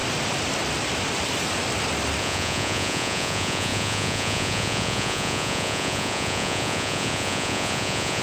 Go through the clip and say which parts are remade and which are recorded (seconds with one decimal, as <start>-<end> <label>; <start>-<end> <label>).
0.0-2.2 recorded; 2.2-8.2 remade